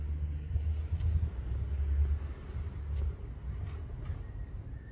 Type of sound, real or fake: real